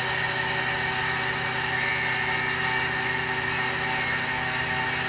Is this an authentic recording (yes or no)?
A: yes